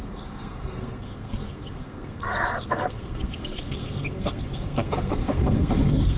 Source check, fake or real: fake